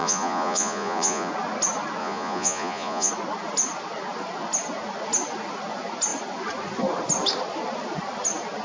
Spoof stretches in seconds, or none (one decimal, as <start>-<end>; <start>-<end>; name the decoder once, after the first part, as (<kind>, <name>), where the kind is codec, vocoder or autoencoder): 0.0-1.3 (vocoder, Vocos); 2.0-3.1